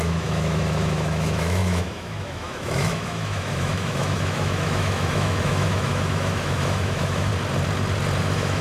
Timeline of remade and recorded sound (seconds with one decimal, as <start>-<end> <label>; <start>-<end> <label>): 0.0-7.3 remade; 7.3-8.2 recorded; 8.2-8.6 remade